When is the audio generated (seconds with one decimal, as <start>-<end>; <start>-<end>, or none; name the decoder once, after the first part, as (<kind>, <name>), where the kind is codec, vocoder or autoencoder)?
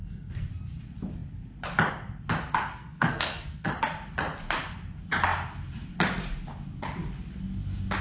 0.0-0.5 (codec, SNAC); 2.7-3.7